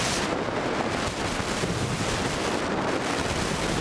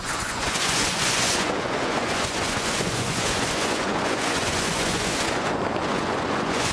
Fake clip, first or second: second